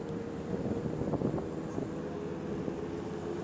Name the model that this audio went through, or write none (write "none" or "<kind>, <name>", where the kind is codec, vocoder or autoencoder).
none